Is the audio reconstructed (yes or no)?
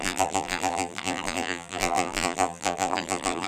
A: yes